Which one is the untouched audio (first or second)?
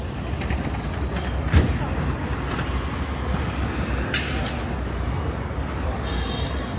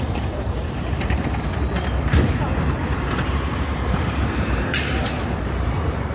first